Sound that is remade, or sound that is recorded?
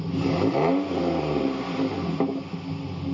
recorded